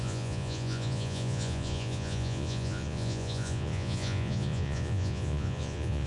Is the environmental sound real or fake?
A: fake